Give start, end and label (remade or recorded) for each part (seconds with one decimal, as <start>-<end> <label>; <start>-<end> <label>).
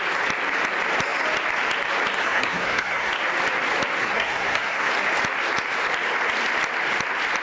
0.0-2.2 recorded; 2.2-3.1 remade; 3.1-4.0 recorded; 4.0-4.9 remade; 4.9-7.4 recorded